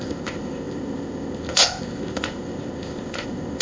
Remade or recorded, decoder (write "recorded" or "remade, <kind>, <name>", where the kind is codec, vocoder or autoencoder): remade, codec, ZipCodec